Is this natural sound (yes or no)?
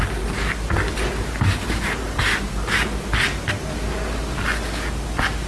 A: yes